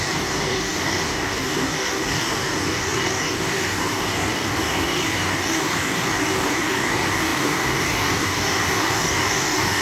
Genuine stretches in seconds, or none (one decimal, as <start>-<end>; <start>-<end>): none